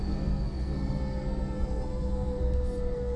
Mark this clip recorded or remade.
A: remade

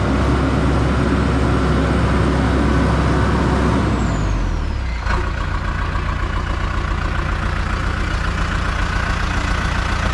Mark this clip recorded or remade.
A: recorded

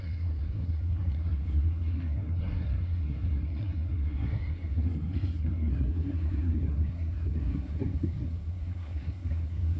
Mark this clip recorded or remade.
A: remade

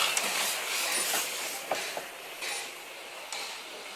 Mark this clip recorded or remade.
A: recorded